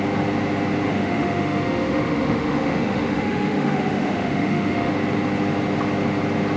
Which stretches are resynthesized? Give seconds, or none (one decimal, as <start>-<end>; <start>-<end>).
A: 0.9-4.9

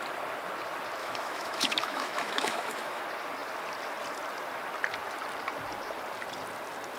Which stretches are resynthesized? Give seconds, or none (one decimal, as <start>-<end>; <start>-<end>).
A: 1.0-3.0

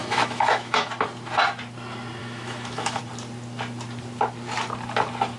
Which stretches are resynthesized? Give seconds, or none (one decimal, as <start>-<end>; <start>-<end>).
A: 0.0-0.9; 2.2-3.0